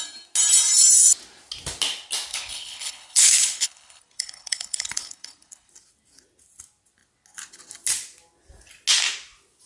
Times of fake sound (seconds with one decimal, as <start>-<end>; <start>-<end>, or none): 2.3-5.7